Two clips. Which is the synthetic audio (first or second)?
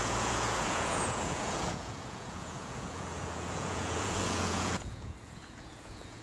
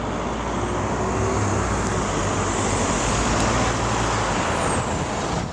first